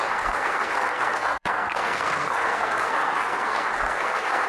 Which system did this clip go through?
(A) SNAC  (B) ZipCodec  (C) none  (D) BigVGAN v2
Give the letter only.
A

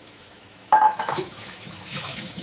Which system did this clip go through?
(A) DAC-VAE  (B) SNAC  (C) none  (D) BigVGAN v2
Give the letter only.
A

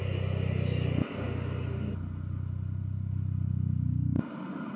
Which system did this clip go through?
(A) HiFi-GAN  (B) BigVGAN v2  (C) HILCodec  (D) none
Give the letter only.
D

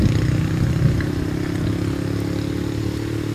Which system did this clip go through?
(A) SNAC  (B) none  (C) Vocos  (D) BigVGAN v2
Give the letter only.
B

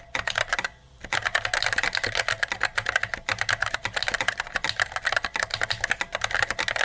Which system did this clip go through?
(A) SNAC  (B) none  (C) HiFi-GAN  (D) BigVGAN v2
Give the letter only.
B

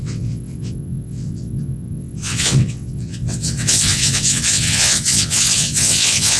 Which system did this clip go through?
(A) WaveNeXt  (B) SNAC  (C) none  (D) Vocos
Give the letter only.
A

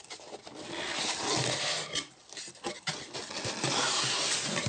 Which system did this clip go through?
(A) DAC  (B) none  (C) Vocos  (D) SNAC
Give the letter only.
B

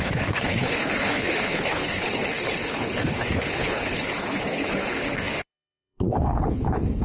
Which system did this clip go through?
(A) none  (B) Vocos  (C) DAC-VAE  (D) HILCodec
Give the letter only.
D